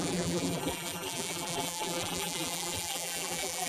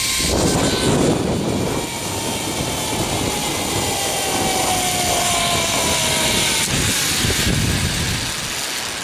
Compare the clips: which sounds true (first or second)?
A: second